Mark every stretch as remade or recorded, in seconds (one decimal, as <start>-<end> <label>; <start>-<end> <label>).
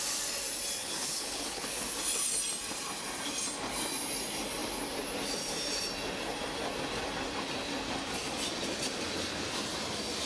0.0-0.8 recorded; 0.8-2.0 remade; 2.0-10.3 recorded